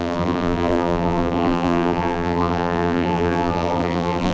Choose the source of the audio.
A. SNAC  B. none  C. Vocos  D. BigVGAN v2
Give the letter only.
D